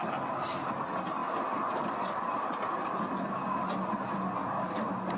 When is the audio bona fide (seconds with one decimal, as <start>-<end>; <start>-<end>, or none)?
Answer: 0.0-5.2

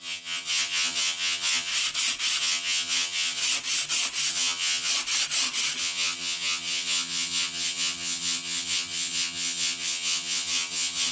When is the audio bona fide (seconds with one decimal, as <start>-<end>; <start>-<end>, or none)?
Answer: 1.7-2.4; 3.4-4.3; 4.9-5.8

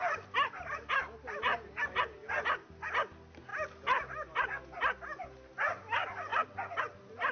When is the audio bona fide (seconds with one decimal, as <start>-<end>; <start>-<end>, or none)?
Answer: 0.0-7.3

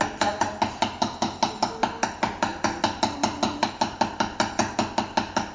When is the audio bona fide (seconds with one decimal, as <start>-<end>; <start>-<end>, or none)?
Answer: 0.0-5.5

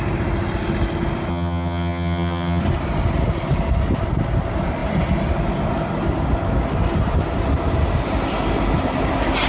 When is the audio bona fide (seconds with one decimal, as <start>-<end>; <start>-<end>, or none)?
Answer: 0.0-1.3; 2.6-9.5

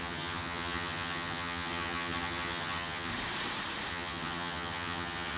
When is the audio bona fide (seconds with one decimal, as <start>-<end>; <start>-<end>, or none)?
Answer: 3.1-3.9